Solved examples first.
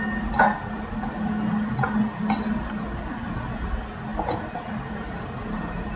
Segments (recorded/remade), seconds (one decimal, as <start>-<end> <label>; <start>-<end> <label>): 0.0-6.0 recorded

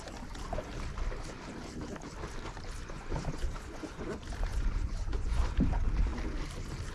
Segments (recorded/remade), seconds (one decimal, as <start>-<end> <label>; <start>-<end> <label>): 0.0-2.8 recorded; 2.8-4.1 remade; 4.1-4.5 recorded; 4.5-5.5 remade; 5.5-6.9 recorded

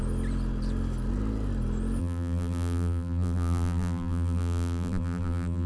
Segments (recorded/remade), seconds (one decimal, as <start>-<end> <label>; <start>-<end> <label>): 0.0-2.0 recorded; 2.0-5.7 remade

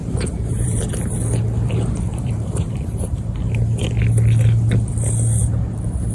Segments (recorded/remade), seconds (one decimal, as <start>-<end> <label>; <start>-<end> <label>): 0.0-0.8 remade; 0.8-2.1 recorded; 2.1-3.2 remade; 3.2-6.1 recorded

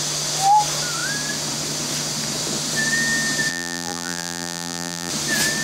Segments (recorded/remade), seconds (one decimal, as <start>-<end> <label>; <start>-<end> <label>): 0.0-3.5 recorded; 3.5-5.1 remade; 5.1-5.6 recorded

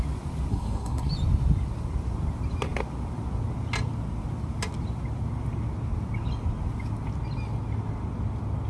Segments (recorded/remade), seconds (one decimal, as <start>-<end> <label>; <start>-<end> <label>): 0.0-0.5 recorded; 0.5-1.1 remade; 1.1-8.7 recorded

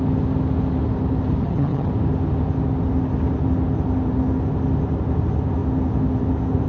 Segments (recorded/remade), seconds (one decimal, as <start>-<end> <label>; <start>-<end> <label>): 0.0-1.4 recorded; 1.4-1.9 remade; 1.9-6.7 recorded

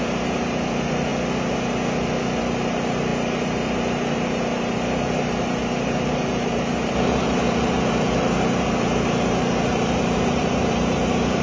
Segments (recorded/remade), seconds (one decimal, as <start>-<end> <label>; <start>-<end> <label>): 0.0-1.1 remade; 1.1-2.4 recorded; 2.4-11.4 remade